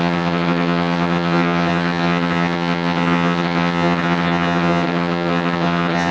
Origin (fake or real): fake